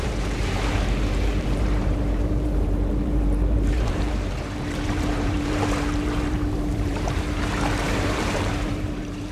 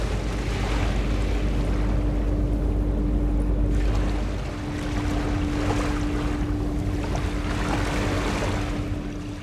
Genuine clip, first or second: second